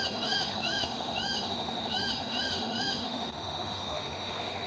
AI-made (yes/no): yes